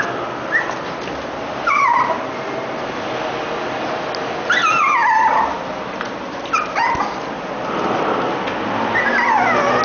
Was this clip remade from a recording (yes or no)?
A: no